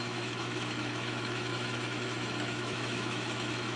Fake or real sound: fake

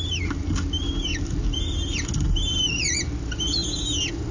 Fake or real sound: real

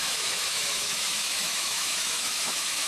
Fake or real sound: fake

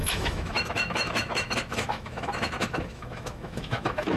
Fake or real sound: fake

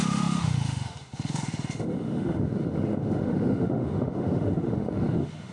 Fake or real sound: fake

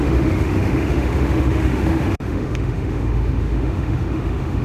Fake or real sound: fake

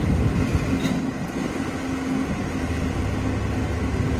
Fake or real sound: real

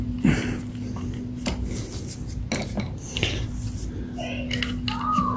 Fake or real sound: real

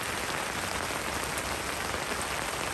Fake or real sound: real